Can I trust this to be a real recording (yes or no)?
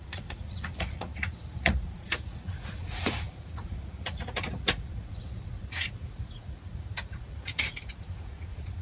no